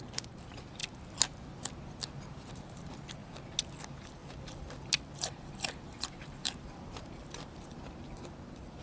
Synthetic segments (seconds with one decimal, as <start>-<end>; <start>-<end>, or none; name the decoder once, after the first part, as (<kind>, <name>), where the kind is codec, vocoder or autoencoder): 0.0-0.8 (vocoder, BigVGAN v2); 2.5-3.2; 3.8-8.8